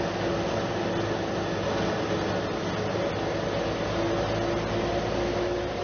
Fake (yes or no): no